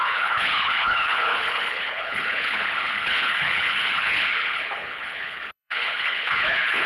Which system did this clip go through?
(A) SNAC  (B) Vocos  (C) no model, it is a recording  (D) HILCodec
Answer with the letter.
D